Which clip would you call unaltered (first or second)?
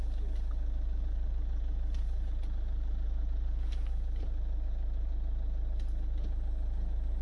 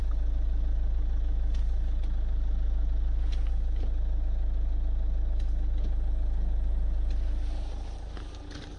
second